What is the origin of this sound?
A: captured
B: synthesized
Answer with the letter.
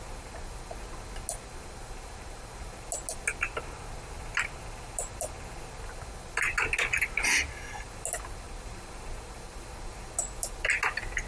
A